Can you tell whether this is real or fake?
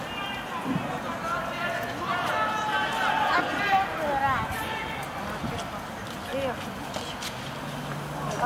real